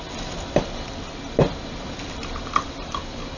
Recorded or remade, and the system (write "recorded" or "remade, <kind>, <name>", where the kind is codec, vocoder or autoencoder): remade, vocoder, BigVGAN v2